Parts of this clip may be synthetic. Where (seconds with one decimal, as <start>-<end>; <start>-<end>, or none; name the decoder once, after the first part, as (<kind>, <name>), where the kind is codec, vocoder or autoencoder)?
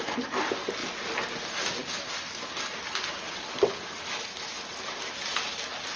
none